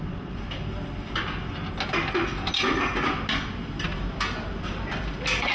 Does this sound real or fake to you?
real